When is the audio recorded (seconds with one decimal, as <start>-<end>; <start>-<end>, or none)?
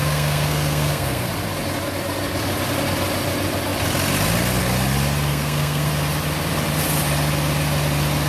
1.3-5.3; 5.9-8.3